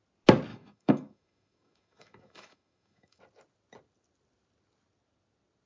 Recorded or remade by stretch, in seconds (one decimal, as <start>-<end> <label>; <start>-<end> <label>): 0.0-0.5 recorded; 0.5-3.2 remade; 3.2-5.7 recorded